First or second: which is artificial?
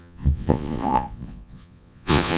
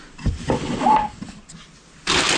first